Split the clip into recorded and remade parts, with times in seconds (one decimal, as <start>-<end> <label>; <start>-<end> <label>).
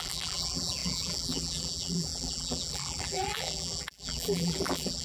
0.0-5.0 remade